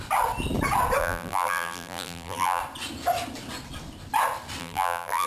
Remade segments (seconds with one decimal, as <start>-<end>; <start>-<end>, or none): 1.0-2.6; 4.6-5.3